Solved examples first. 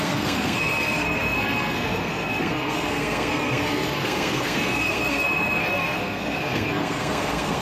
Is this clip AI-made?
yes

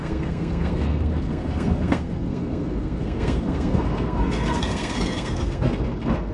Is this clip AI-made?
yes